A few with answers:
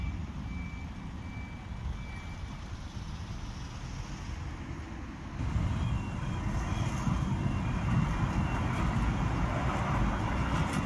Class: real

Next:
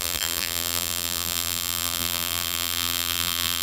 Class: fake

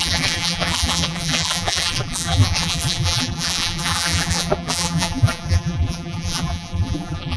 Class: fake